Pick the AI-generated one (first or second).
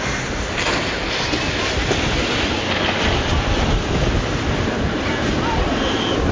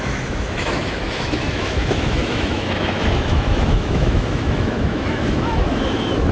second